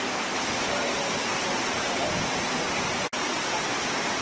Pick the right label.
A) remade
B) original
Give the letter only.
B